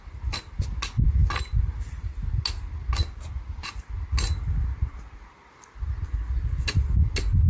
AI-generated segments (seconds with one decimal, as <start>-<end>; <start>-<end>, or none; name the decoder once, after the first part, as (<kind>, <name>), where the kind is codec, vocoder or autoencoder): none